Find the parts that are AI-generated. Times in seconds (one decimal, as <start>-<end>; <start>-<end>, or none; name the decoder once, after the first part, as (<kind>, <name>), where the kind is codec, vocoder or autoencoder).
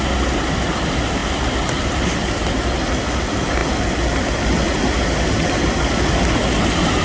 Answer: none